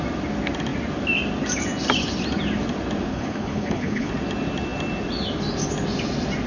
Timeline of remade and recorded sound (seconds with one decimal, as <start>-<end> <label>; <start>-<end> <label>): 0.0-3.1 recorded; 3.1-4.1 remade; 4.1-6.5 recorded

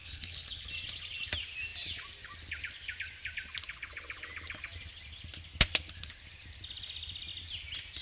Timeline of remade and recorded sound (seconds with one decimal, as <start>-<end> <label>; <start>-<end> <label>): 0.0-0.7 remade; 0.7-8.0 recorded

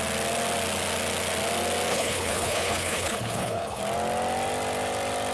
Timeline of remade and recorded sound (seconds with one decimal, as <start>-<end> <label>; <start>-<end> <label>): 0.0-1.9 recorded; 1.9-3.8 remade; 3.8-5.3 recorded